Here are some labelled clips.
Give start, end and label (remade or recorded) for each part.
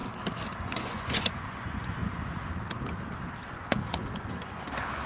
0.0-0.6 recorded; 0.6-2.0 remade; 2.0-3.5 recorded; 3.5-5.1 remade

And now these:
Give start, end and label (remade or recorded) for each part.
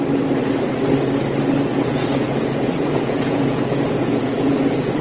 0.0-1.7 recorded; 1.7-5.0 remade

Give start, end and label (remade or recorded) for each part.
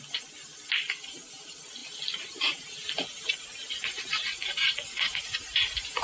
0.0-6.0 recorded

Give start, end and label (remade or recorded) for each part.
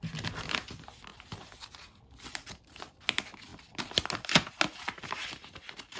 0.0-6.0 recorded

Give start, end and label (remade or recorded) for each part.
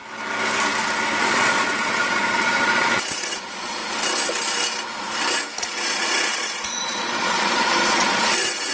0.0-1.2 recorded; 1.2-3.8 remade; 3.8-5.6 recorded; 5.6-8.7 remade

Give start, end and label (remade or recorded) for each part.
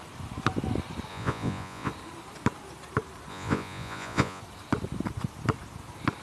0.0-1.1 recorded; 1.1-1.9 remade; 1.9-3.3 recorded; 3.3-4.4 remade; 4.4-6.2 recorded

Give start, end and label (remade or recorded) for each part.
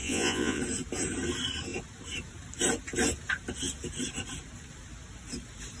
0.0-0.6 remade; 0.6-5.8 recorded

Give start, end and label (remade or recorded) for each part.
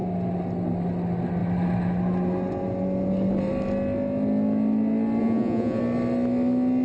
0.0-5.2 recorded; 5.2-5.8 remade; 5.8-6.8 recorded